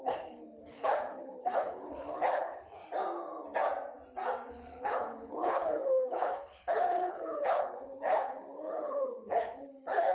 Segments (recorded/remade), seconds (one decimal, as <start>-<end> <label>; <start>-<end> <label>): 0.0-2.8 remade; 2.8-4.5 recorded; 4.5-10.1 remade